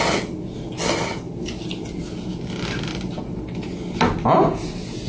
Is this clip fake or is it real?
real